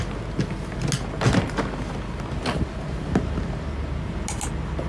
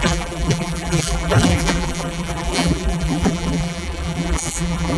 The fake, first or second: second